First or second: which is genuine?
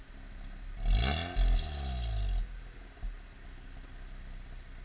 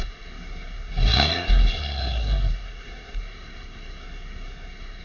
first